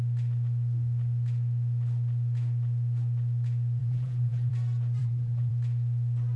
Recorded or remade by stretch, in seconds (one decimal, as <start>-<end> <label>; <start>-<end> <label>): 0.0-3.8 recorded; 3.8-4.5 remade; 4.5-5.0 recorded; 5.0-5.5 remade; 5.5-6.4 recorded